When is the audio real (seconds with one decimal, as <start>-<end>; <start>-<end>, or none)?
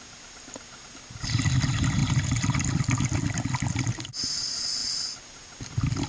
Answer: 0.0-6.1